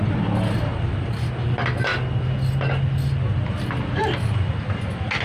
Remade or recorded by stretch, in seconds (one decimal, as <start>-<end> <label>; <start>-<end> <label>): 0.0-5.2 recorded